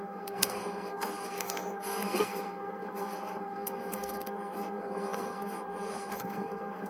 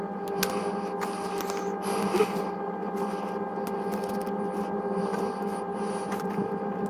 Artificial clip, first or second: first